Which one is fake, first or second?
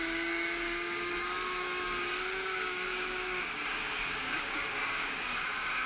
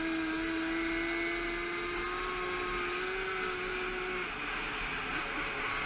first